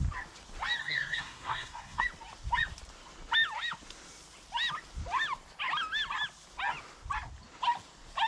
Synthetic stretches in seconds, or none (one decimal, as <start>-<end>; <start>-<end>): 0.8-2.0